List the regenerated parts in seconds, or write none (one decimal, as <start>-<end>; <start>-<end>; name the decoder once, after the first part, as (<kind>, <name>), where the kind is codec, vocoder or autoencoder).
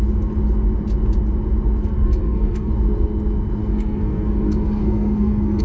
1.8-2.7 (codec, SNAC); 3.6-5.6